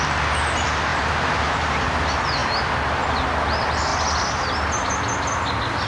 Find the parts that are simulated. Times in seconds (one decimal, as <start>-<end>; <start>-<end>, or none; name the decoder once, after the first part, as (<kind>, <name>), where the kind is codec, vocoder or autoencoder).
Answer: 0.9-1.4 (vocoder, BigVGAN v2)

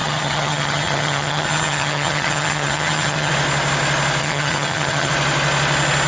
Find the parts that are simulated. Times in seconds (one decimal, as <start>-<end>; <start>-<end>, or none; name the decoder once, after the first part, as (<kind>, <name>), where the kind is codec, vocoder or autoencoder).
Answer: 0.0-3.3 (vocoder, HiFi-GAN); 4.2-5.1

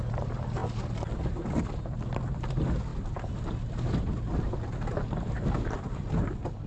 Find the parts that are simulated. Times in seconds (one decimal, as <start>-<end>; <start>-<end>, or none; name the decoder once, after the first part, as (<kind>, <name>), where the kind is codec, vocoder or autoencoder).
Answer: 0.0-0.6 (vocoder, BigVGAN v2); 1.6-2.9; 5.8-6.7

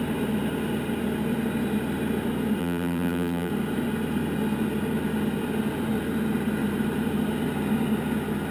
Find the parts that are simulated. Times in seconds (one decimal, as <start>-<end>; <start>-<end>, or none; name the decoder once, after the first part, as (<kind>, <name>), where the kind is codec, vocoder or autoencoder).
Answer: 2.6-3.5 (vocoder, BigVGAN v2)